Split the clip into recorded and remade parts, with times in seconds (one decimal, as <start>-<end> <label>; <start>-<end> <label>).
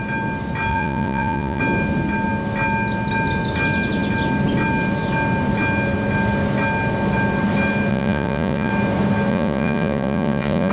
0.0-0.7 recorded; 0.7-1.6 remade; 1.6-7.9 recorded; 7.9-8.7 remade; 8.7-9.3 recorded; 9.3-10.7 remade